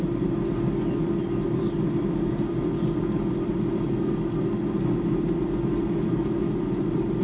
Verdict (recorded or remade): recorded